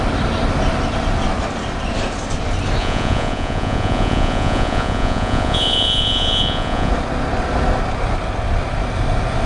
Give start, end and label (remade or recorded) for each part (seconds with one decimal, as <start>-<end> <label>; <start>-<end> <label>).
0.0-2.8 recorded; 2.8-6.9 remade; 6.9-9.5 recorded